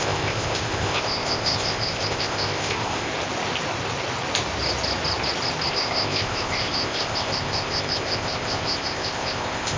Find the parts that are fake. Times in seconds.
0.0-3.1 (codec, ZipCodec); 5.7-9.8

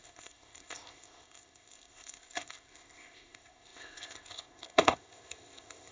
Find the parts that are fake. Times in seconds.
0.0-5.9 (codec, ZipCodec)

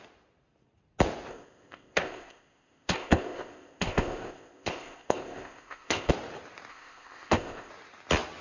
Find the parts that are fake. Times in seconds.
1.3-6.1 (codec, ZipCodec); 6.7-7.7

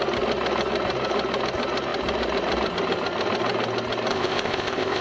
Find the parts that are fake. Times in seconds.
4.1-5.0 (codec, ZipCodec)

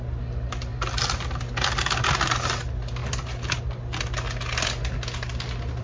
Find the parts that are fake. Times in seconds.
none